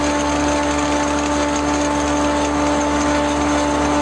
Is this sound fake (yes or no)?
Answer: no